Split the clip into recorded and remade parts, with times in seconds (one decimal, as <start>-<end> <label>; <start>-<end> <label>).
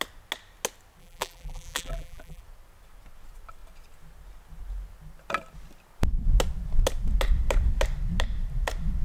0.0-1.0 recorded; 1.0-2.4 remade; 2.4-9.0 recorded